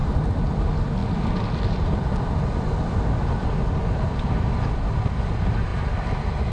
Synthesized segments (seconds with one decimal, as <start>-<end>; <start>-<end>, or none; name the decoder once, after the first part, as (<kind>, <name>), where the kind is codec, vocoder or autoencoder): 0.0-1.0 (vocoder, BigVGAN v2); 4.9-5.7